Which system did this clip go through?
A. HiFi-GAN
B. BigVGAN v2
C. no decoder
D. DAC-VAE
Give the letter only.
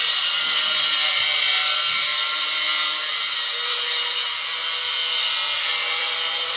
B